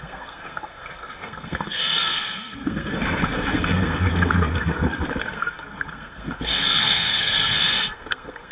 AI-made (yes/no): yes